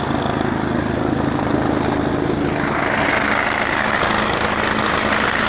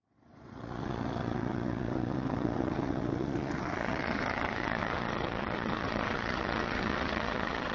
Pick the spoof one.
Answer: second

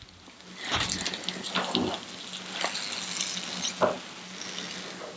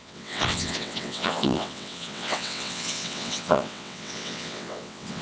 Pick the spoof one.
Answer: second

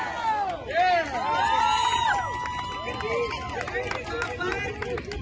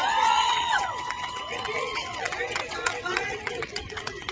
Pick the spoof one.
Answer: second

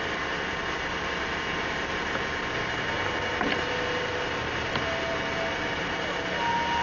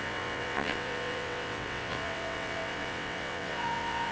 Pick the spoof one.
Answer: second